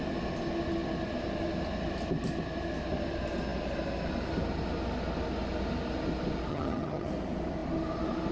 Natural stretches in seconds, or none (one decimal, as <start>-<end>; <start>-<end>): 0.0-6.5; 7.1-8.3